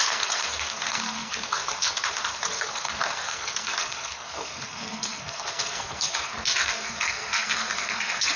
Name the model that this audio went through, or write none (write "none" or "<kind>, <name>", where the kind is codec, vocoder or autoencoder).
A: codec, SNAC